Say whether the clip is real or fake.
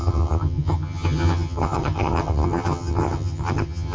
fake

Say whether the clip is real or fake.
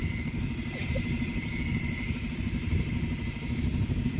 real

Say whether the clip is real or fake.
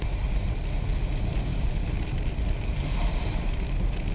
real